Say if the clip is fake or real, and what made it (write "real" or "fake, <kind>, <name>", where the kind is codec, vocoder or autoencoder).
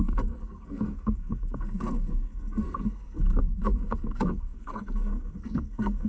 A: fake, codec, SNAC